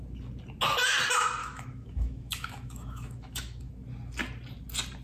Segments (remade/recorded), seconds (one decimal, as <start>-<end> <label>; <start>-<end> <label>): 0.0-1.4 recorded; 1.4-3.7 remade; 3.7-5.0 recorded